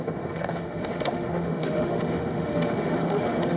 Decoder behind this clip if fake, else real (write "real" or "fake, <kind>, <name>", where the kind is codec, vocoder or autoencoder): fake, autoencoder, DAC-VAE